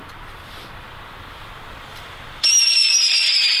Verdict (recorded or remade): remade